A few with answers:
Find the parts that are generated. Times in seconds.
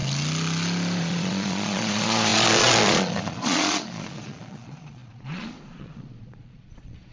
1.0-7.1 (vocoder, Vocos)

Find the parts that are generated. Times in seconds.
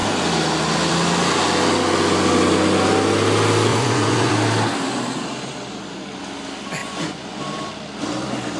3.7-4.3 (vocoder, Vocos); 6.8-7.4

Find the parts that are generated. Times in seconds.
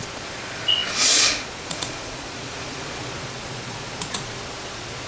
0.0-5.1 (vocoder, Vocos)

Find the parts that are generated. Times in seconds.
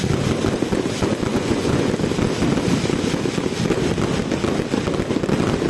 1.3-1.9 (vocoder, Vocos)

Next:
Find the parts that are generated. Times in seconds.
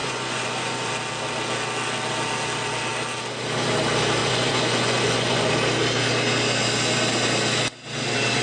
0.0-0.9 (vocoder, Vocos); 4.2-5.5